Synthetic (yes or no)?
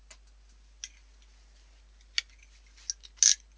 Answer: no